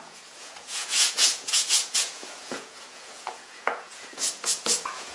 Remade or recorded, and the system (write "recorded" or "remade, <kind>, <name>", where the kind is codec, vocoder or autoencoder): remade, vocoder, Vocos